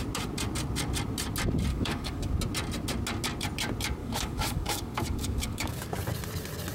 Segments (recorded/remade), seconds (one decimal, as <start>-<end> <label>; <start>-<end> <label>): 0.0-1.7 recorded; 1.7-2.3 remade; 2.3-4.0 recorded; 4.0-5.9 remade; 5.9-6.7 recorded